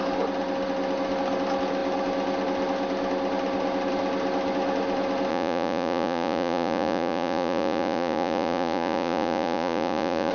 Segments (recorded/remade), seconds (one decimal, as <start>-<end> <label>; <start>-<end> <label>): 0.0-5.3 recorded; 5.3-10.3 remade